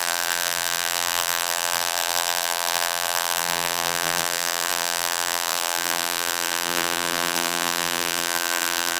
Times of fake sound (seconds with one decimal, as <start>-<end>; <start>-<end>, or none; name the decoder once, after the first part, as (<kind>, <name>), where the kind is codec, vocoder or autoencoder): 0.0-9.0 (vocoder, BigVGAN v2)